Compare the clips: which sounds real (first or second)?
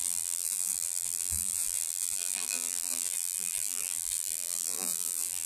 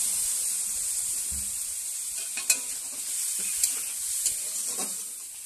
second